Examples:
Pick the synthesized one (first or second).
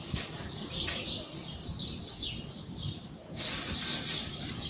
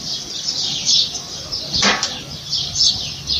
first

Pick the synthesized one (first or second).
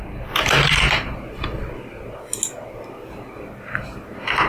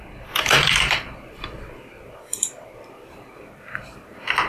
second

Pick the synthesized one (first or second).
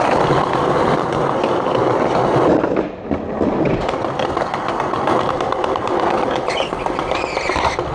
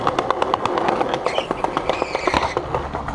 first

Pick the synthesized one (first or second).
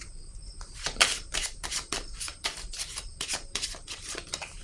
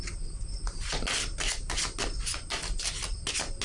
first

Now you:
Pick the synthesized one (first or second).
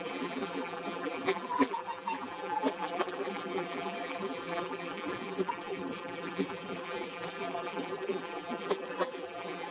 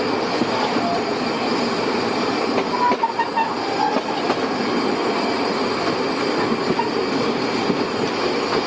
first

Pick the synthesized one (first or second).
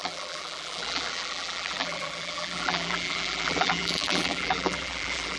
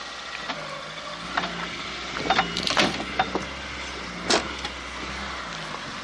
first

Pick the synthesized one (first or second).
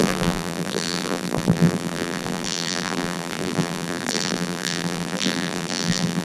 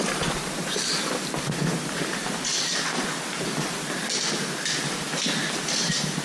first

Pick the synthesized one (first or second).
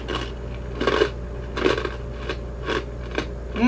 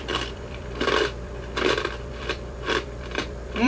second